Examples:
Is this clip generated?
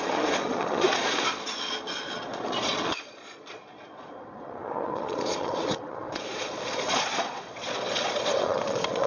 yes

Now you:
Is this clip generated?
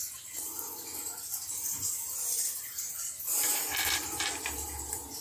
no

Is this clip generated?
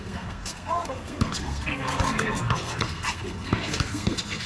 yes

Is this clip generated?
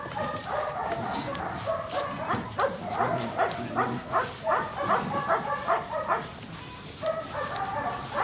no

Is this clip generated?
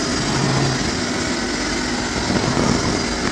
no